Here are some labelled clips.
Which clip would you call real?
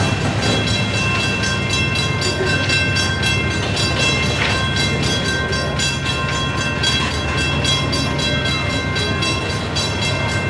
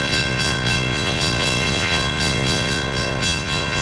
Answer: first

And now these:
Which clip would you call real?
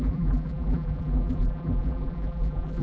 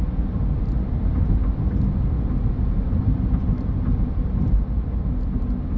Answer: second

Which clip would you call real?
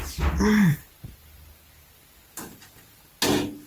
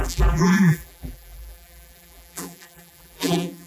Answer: first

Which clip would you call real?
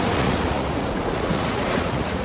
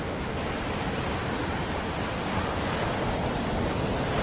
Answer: second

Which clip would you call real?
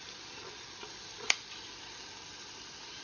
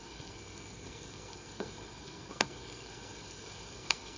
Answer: first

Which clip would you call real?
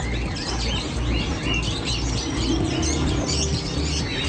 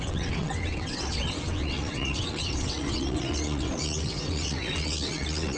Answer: first